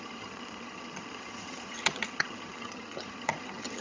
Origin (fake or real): fake